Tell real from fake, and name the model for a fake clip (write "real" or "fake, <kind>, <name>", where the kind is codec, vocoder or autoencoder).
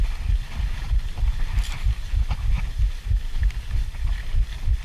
real